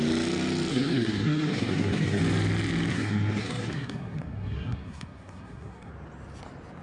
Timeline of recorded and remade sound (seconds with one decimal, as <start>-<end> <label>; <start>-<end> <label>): 0.0-0.7 recorded; 0.7-2.2 remade; 2.2-2.9 recorded; 2.9-5.9 remade; 5.9-6.8 recorded